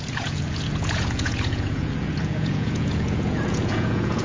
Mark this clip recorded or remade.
remade